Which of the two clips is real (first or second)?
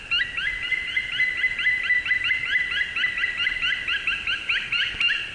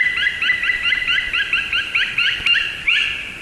first